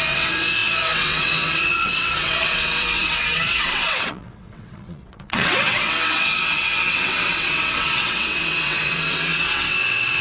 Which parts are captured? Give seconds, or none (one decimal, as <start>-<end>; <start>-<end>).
none